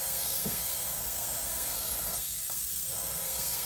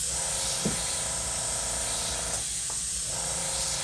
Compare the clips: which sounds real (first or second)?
second